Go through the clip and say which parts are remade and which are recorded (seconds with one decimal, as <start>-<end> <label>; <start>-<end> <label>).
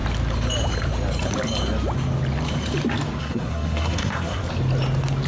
0.0-3.2 recorded; 3.2-4.4 remade; 4.4-5.3 recorded